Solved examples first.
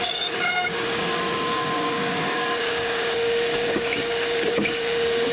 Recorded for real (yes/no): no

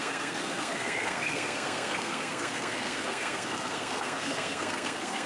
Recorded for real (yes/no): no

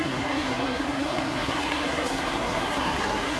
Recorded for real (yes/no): no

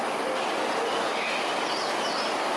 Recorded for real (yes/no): yes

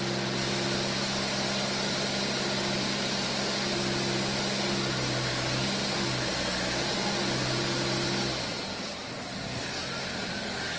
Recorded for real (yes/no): yes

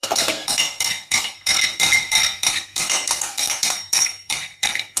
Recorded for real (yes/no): no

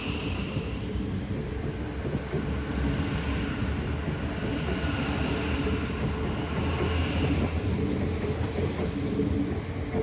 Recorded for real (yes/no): yes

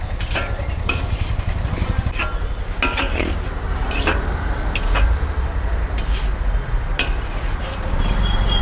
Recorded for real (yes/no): yes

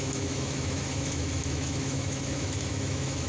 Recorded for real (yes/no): no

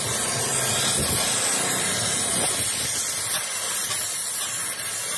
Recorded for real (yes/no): yes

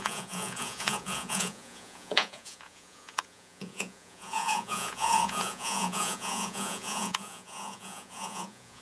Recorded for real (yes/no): no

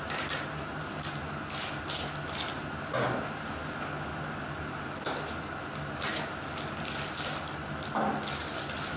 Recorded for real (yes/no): yes